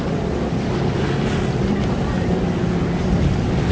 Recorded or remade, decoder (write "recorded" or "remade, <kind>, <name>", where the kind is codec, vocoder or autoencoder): recorded